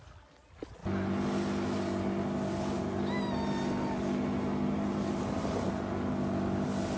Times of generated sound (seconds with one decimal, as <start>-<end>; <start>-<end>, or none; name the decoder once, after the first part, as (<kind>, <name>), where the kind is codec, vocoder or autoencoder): none